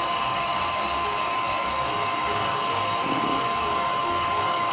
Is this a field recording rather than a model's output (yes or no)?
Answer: no